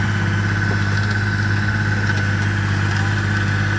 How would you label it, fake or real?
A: real